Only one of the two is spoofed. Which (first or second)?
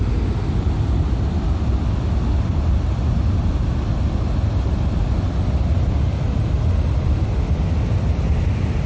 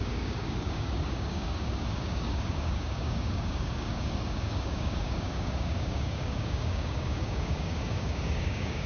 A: second